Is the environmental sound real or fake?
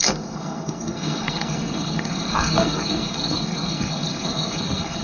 fake